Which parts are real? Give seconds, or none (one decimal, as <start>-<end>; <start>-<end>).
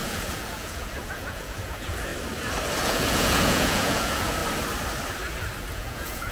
2.1-2.8; 4.4-5.7